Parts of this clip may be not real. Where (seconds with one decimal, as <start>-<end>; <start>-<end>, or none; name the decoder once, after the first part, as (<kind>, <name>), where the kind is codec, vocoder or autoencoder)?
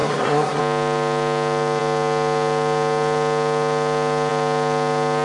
0.0-0.6 (codec, SNAC)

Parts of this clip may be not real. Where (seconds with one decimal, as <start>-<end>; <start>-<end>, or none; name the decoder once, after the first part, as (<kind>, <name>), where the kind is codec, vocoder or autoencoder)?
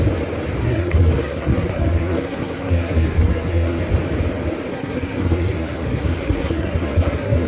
0.6-3.8 (codec, SNAC); 4.7-7.5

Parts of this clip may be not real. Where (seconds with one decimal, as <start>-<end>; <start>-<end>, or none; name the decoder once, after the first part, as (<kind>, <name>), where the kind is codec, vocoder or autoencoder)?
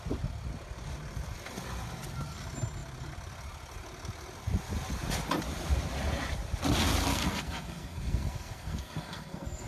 7.1-9.7 (codec, SNAC)